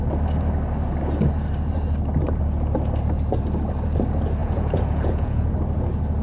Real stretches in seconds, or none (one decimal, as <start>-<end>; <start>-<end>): 0.0-4.4; 5.5-6.2